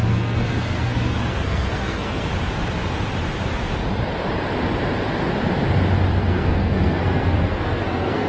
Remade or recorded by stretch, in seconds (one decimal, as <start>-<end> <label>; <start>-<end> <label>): 0.0-2.3 remade; 2.3-6.2 recorded; 6.2-8.3 remade